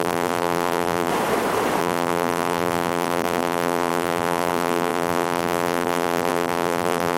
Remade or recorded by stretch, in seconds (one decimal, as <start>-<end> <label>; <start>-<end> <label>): 0.0-1.1 remade; 1.1-1.8 recorded; 1.8-7.2 remade